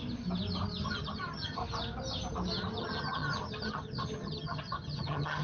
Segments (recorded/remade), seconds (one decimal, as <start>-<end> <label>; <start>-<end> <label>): 0.0-0.8 recorded; 0.8-1.6 remade; 1.6-2.8 recorded; 2.8-5.4 remade